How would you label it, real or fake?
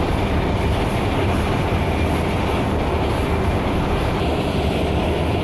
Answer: real